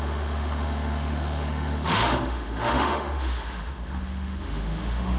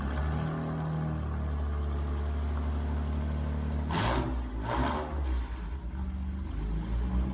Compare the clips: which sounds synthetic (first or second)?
first